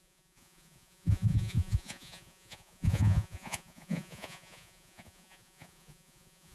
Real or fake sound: fake